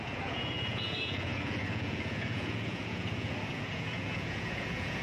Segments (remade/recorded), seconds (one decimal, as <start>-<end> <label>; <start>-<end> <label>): 0.0-5.0 remade

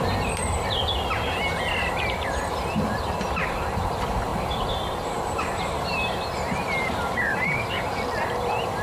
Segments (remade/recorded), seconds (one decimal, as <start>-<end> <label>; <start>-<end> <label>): 0.0-4.3 recorded; 4.3-8.0 remade; 8.0-8.8 recorded

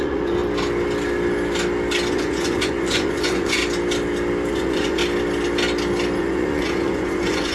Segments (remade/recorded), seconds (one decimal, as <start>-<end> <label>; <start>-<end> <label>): 0.0-0.4 remade; 0.4-2.1 recorded; 2.1-3.6 remade; 3.6-4.5 recorded; 4.5-5.0 remade; 5.0-6.2 recorded; 6.2-7.5 remade

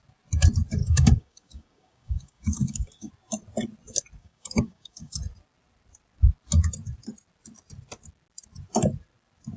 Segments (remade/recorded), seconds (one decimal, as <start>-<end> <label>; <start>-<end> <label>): 0.0-0.8 recorded; 0.8-3.1 remade; 3.1-4.2 recorded; 4.2-5.2 remade; 5.2-9.6 recorded

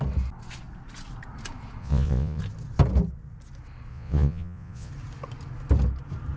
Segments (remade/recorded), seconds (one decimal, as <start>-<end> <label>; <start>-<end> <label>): 0.0-1.8 recorded; 1.8-2.4 remade; 2.4-3.9 recorded; 3.9-4.9 remade; 4.9-6.4 recorded

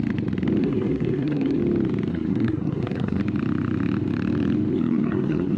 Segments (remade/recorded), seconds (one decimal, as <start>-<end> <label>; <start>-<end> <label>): 0.0-0.6 recorded; 0.6-1.6 remade; 1.6-2.1 recorded; 2.1-3.2 remade; 3.2-4.7 recorded; 4.7-5.6 remade

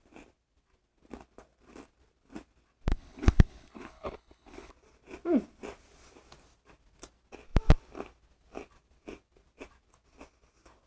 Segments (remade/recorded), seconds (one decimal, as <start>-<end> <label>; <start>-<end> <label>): 0.0-2.9 recorded; 2.9-4.7 remade; 4.7-10.9 recorded

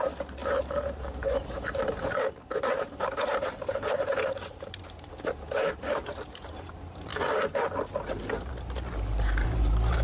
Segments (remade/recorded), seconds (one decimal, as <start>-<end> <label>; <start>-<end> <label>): 0.0-7.1 remade; 7.1-8.1 recorded; 8.1-10.0 remade